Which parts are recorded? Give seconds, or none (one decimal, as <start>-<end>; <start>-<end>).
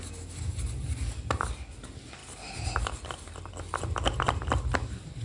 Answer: 0.0-2.2; 3.5-5.2